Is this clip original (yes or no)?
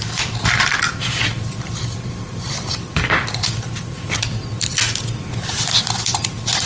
no